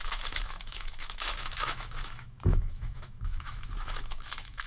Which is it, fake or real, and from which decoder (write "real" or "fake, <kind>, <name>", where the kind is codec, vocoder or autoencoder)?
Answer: fake, autoencoder, DAC-VAE